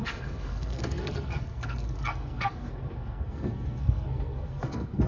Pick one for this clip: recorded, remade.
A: remade